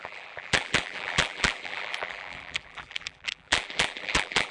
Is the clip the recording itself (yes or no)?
no